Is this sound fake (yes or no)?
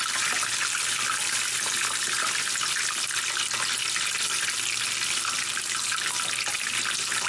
no